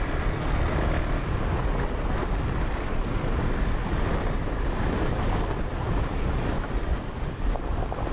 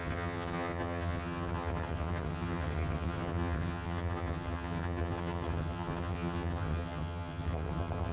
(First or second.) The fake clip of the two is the second